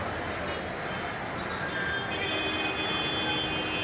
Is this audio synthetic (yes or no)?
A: no